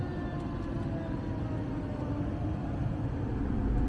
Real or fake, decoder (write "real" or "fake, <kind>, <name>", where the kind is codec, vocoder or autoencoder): real